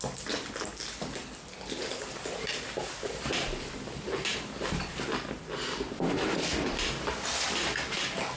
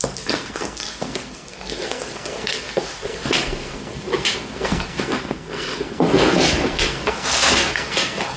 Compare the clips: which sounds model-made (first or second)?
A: second